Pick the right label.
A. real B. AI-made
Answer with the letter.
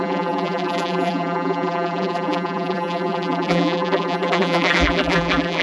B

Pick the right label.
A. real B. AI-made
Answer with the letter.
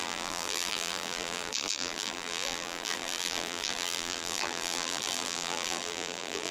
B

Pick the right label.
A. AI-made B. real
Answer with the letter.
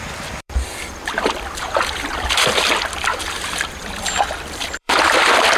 A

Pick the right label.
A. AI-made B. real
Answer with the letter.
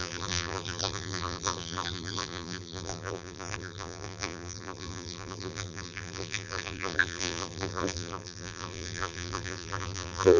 A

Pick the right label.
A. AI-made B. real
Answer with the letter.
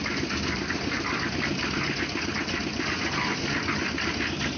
A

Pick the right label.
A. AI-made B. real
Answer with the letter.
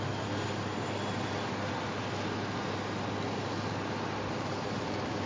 B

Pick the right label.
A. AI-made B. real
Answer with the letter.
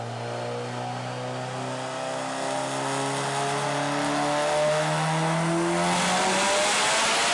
B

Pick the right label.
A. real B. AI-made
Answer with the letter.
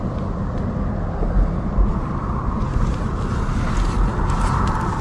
A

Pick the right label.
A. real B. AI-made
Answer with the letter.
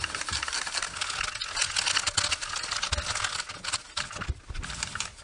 A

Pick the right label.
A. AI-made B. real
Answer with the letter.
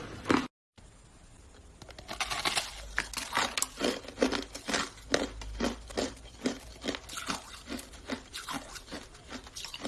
B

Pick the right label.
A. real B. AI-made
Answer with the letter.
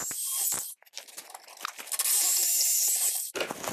A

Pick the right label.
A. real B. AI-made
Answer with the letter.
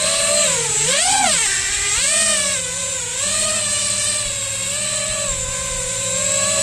A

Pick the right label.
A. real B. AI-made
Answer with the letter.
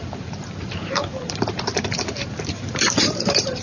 B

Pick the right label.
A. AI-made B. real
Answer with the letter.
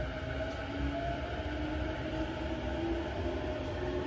B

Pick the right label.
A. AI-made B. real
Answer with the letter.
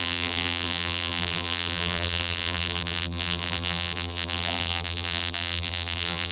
A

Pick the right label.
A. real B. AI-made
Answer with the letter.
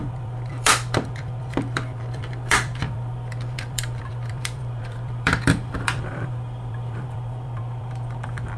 B